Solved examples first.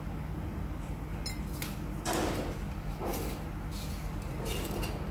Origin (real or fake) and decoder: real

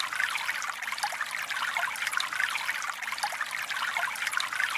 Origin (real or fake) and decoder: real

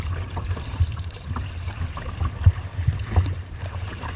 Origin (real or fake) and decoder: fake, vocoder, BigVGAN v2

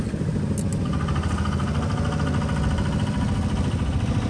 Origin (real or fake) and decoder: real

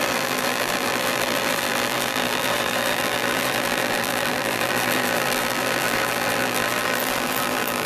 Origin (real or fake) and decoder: fake, vocoder, BigVGAN v2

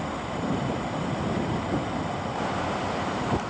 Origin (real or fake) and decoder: fake, vocoder, BigVGAN v2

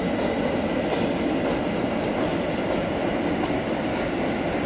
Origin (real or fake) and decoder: real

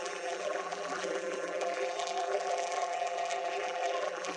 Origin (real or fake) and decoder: fake, vocoder, BigVGAN v2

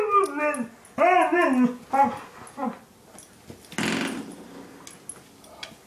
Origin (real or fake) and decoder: real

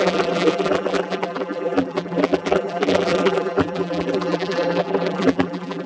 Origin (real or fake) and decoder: fake, vocoder, BigVGAN v2